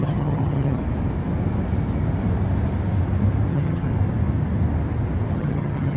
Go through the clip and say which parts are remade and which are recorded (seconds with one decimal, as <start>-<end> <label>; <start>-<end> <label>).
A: 0.0-0.8 remade; 0.8-3.5 recorded; 3.5-3.9 remade; 3.9-5.3 recorded; 5.3-6.0 remade